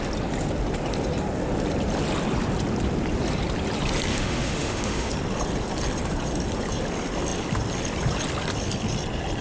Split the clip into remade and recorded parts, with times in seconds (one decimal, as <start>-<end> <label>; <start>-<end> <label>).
0.0-4.1 recorded; 4.1-5.1 remade; 5.1-9.4 recorded